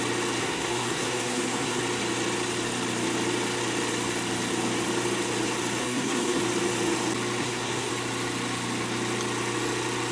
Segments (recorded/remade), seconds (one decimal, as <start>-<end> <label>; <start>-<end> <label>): 0.0-0.4 recorded; 0.4-1.8 remade; 1.8-5.8 recorded; 5.8-6.4 remade; 6.4-7.4 recorded; 7.4-7.9 remade; 7.9-10.1 recorded